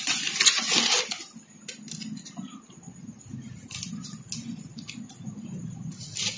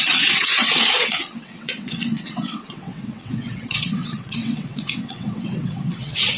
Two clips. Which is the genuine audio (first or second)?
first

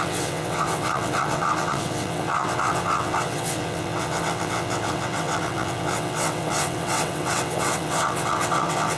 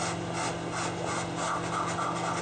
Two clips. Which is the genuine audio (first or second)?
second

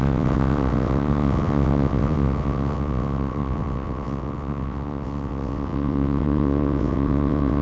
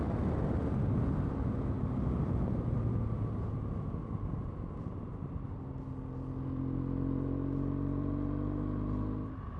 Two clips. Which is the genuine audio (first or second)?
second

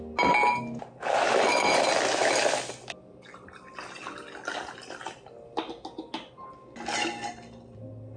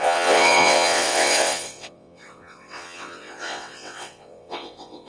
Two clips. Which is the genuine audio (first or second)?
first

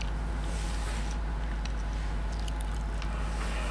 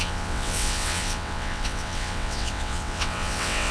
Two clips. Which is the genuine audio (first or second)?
first